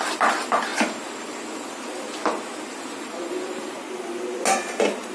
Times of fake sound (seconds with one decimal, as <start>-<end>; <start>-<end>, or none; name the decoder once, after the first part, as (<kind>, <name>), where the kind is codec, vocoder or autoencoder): none